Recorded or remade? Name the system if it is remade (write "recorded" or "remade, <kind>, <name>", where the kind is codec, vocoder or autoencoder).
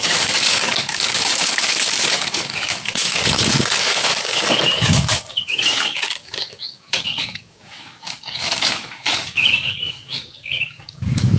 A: remade, codec, DAC